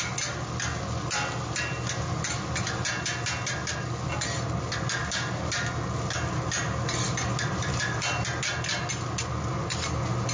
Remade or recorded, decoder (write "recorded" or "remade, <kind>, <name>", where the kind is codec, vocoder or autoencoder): recorded